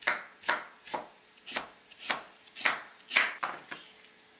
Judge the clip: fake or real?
real